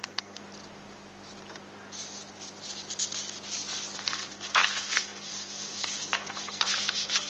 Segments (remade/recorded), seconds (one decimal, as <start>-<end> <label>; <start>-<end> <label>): 0.0-0.4 remade; 0.4-4.0 recorded; 4.0-7.3 remade